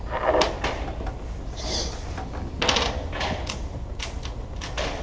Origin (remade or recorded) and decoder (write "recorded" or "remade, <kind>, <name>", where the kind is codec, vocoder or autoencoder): recorded